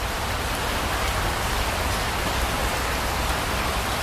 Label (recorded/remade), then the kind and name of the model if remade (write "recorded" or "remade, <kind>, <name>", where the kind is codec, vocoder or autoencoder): remade, vocoder, BigVGAN v2